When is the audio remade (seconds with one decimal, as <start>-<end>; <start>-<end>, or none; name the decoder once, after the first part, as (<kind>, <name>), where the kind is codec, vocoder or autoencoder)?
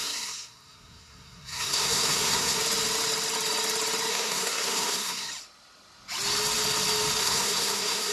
0.0-2.6 (codec, SNAC); 4.1-5.3; 7.2-8.1